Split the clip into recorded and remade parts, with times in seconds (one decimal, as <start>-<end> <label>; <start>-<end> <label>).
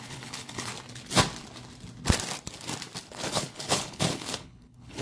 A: 0.0-0.7 remade; 0.7-3.0 recorded; 3.0-5.0 remade